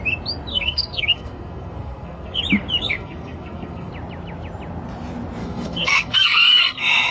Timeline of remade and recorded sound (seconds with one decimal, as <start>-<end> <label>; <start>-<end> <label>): 0.0-0.5 recorded; 0.5-2.4 remade; 2.4-2.8 recorded; 2.8-3.9 remade; 3.9-5.4 recorded; 5.4-7.1 remade